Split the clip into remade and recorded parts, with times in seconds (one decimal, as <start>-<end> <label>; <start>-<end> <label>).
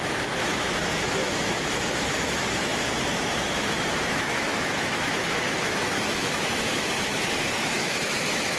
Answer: 0.0-8.6 remade